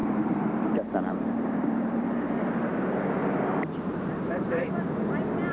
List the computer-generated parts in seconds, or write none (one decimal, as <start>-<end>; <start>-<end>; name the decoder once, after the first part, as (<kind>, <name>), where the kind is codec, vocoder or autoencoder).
0.0-2.3 (vocoder, BigVGAN v2); 3.9-4.6